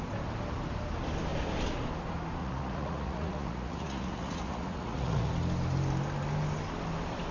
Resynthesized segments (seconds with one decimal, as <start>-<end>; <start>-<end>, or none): 2.4-5.3